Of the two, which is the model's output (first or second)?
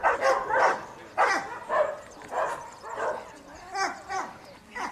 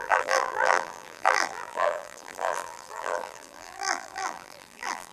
second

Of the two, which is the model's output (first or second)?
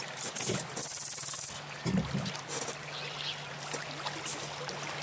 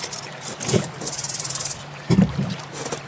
second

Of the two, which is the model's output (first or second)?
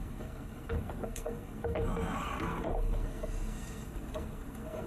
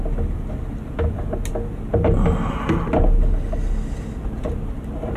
first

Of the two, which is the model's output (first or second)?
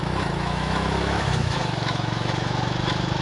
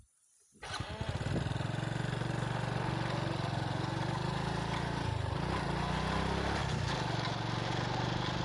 first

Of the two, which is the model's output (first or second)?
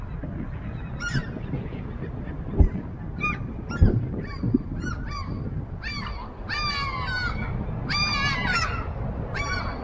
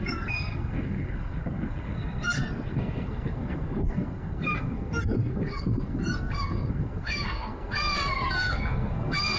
second